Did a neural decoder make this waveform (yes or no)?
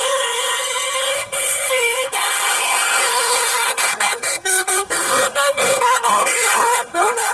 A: yes